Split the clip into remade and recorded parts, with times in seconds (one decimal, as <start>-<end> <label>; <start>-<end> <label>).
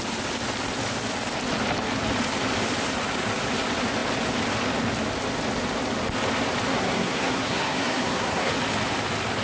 0.0-6.7 recorded; 6.7-8.5 remade; 8.5-9.4 recorded